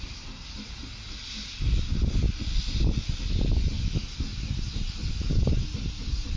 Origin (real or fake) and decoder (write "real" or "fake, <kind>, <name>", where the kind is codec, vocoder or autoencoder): real